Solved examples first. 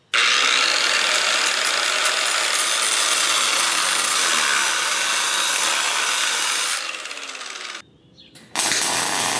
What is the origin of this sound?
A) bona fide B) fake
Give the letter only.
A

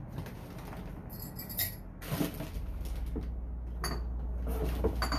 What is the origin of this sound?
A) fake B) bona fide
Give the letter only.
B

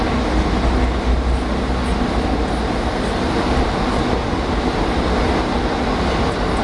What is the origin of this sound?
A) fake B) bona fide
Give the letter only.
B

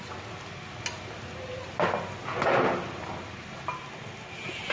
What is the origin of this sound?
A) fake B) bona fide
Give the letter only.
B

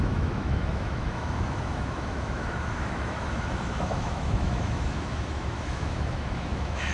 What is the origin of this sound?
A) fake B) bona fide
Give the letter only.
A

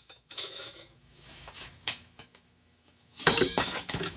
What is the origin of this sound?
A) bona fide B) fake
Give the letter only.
B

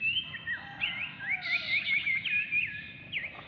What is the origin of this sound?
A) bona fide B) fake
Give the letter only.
A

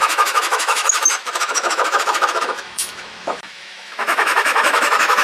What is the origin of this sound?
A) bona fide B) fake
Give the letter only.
B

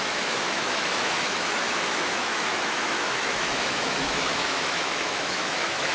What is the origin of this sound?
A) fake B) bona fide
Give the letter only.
A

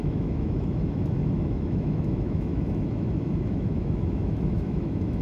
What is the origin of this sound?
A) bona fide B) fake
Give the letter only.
B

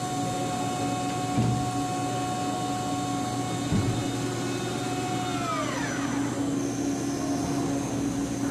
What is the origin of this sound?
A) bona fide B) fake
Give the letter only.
A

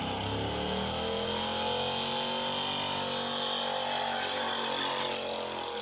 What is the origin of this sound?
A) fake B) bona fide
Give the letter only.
B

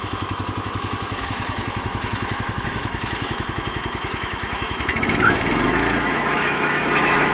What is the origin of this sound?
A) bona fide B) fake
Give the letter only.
B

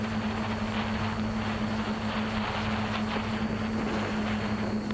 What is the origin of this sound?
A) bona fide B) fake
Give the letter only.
A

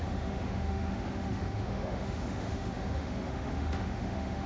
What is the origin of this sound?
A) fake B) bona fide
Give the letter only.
A